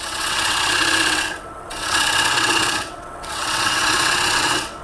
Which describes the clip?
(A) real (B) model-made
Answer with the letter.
B